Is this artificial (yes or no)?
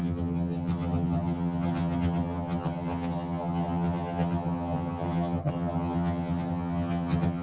yes